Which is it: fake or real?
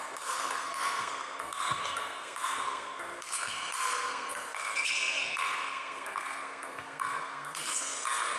fake